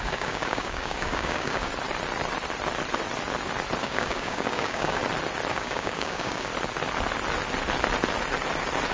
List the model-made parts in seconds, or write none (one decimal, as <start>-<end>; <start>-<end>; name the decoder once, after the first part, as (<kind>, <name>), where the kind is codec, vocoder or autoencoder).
0.0-1.7 (codec, DAC); 3.8-5.0; 5.5-6.5